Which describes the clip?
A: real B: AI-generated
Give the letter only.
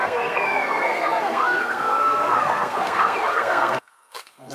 B